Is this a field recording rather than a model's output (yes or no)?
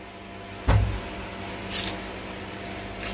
yes